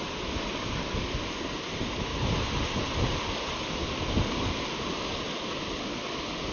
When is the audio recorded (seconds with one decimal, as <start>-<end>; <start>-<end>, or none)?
0.0-6.5